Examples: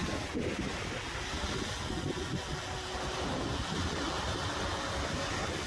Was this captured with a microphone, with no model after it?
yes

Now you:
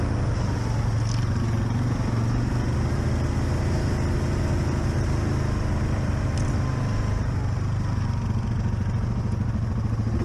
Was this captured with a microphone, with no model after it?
yes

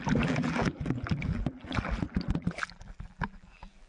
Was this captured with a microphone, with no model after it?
no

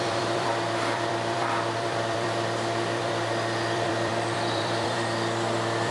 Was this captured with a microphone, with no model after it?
no